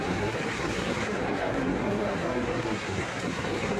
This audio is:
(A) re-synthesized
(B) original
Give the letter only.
A